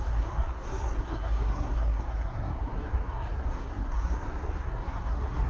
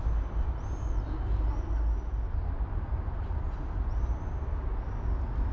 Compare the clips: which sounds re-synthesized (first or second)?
first